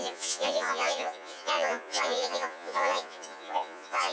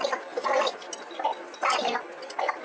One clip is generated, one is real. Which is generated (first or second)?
first